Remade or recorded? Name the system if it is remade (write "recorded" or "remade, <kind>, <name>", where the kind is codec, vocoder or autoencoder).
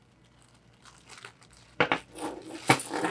recorded